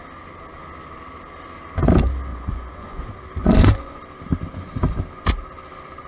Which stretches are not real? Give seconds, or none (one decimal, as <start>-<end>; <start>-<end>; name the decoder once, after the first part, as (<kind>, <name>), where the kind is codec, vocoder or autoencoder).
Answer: 2.3-3.0 (vocoder, Vocos); 3.4-4.0